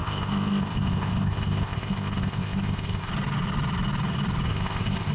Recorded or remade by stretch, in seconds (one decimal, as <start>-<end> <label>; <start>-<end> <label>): 0.0-3.1 remade; 3.1-4.5 recorded; 4.5-5.1 remade